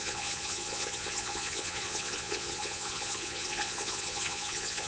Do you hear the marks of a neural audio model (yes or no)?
yes